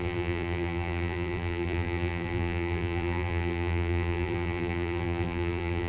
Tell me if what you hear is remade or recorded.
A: remade